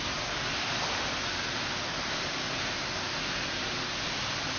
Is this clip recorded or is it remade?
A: remade